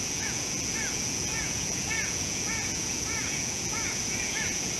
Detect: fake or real fake